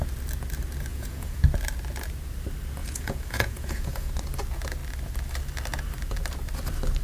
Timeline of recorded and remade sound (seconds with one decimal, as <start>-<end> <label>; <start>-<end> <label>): 0.0-0.9 recorded; 0.9-1.4 remade; 1.4-2.8 recorded; 2.8-4.1 remade; 4.1-7.0 recorded